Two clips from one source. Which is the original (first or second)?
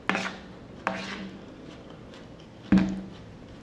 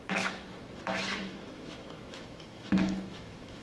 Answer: first